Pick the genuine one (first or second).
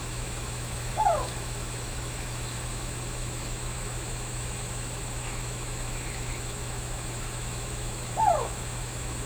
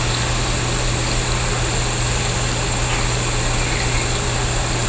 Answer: second